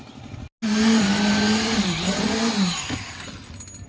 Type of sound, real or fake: real